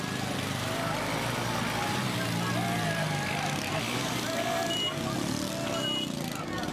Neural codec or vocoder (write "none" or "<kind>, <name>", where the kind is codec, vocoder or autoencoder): none